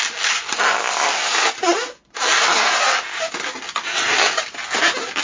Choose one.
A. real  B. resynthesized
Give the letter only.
A